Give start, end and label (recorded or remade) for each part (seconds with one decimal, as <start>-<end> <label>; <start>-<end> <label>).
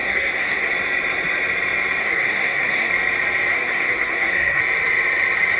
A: 0.0-0.7 remade; 0.7-2.0 recorded; 2.0-2.9 remade; 2.9-3.5 recorded; 3.5-4.6 remade; 4.6-5.6 recorded